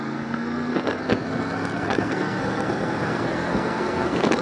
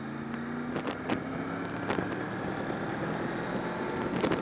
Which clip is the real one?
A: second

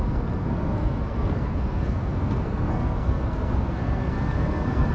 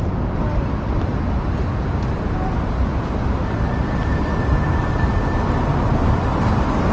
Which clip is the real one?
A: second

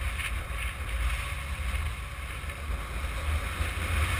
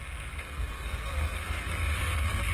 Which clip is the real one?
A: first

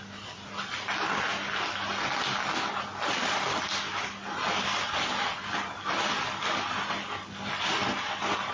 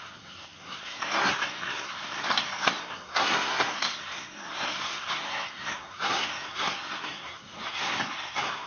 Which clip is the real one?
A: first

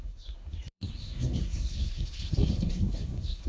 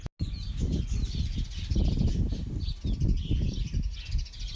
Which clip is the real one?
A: second